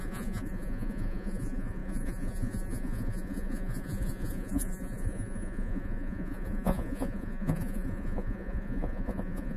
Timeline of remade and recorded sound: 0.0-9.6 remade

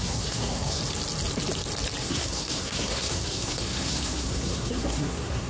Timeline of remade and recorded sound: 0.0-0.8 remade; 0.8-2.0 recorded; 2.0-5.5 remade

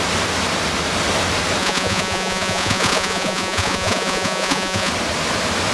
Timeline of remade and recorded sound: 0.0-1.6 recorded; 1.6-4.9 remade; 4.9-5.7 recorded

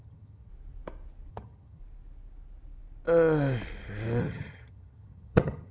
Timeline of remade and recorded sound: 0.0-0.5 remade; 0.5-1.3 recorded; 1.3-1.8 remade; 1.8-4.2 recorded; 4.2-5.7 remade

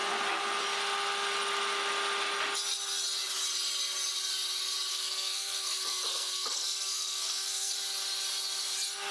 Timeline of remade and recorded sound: 0.0-4.9 recorded; 4.9-7.7 remade; 7.7-9.1 recorded

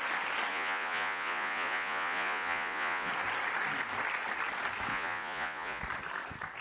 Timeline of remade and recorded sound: 0.0-0.5 recorded; 0.5-3.1 remade; 3.1-4.9 recorded; 4.9-5.8 remade; 5.8-6.6 recorded

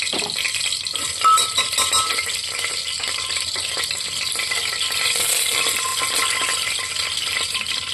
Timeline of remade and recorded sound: 0.0-7.9 recorded